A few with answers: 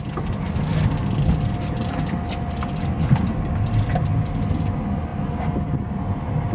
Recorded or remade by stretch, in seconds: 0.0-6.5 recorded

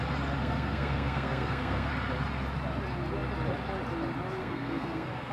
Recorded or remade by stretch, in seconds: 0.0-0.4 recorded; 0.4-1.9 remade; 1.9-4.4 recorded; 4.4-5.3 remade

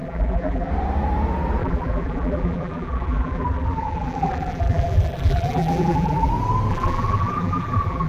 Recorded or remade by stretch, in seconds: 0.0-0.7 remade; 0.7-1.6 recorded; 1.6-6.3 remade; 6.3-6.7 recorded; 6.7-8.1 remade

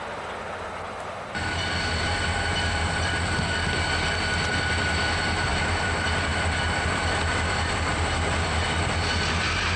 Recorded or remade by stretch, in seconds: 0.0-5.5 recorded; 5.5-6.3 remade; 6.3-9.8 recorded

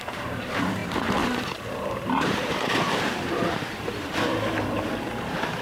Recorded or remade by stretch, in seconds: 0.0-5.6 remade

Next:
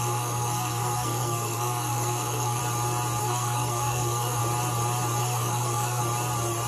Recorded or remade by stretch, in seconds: 0.0-2.6 remade; 2.6-3.2 recorded; 3.2-4.4 remade; 4.4-5.2 recorded; 5.2-6.0 remade; 6.0-6.7 recorded

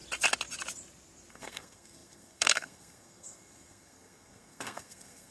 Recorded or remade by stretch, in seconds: 0.0-1.3 recorded; 1.3-5.3 remade

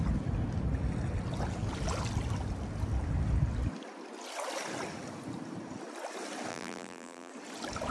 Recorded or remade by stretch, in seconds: 0.0-6.5 recorded; 6.5-7.3 remade; 7.3-7.9 recorded